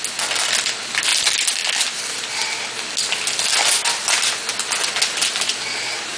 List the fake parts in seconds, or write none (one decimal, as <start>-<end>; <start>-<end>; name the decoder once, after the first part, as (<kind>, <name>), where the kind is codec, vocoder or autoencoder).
none